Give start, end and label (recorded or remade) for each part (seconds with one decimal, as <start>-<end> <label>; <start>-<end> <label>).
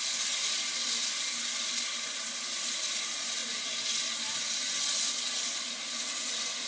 0.0-6.7 recorded